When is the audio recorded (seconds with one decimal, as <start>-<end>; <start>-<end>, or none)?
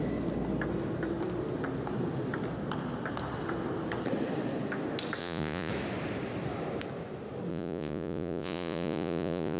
0.0-5.2; 5.7-7.5